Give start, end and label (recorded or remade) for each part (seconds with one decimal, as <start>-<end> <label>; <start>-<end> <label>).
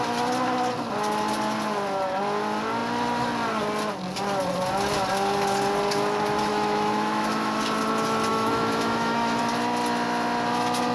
0.0-6.5 recorded; 6.5-7.6 remade; 7.6-8.3 recorded; 8.3-9.4 remade; 9.4-10.9 recorded